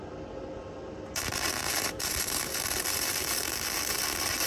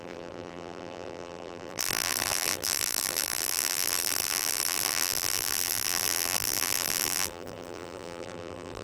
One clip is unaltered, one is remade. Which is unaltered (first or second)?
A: first